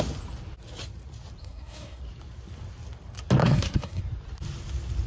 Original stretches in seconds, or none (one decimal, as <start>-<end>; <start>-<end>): 0.0-1.4; 2.0-3.4; 4.0-5.1